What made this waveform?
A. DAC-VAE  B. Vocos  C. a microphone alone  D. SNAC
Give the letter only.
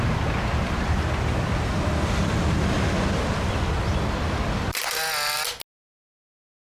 C